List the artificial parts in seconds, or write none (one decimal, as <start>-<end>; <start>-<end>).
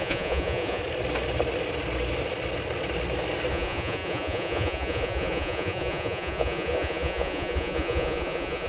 0.0-0.8; 3.5-8.7